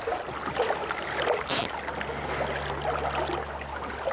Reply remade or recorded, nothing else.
recorded